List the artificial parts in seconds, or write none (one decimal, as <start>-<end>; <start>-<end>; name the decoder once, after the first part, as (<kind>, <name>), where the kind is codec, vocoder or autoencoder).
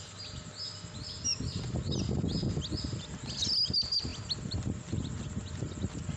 none